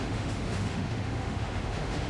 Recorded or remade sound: remade